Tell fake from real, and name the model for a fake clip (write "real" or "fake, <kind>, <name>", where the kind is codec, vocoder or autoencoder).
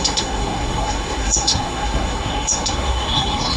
fake, codec, SNAC